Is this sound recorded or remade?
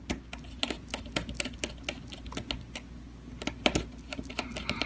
recorded